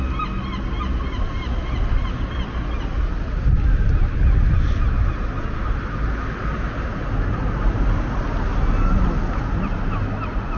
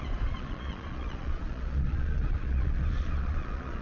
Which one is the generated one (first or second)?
second